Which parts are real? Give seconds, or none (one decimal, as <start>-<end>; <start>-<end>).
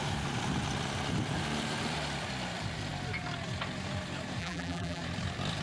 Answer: 0.0-4.4; 5.0-5.6